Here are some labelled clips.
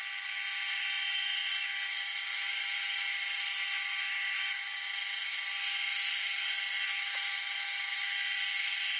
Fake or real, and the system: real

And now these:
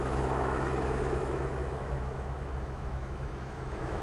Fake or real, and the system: fake, autoencoder, DAC-VAE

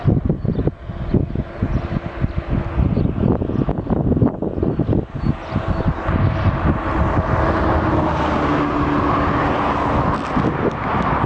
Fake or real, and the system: real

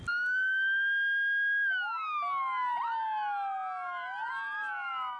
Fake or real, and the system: real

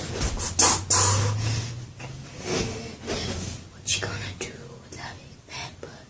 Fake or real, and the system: real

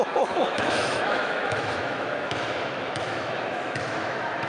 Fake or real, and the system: fake, autoencoder, DAC-VAE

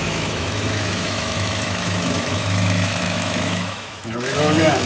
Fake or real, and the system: fake, autoencoder, DAC-VAE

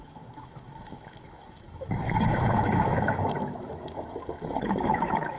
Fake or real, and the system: fake, autoencoder, DAC-VAE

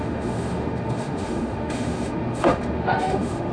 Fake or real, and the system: fake, autoencoder, DAC-VAE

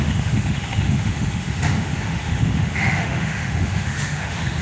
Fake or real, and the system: fake, autoencoder, DAC-VAE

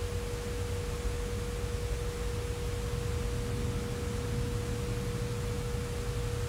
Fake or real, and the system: real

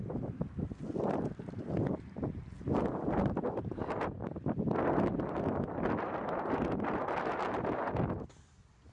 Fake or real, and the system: real